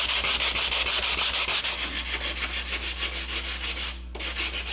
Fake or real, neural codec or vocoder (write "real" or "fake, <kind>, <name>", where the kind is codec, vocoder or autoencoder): real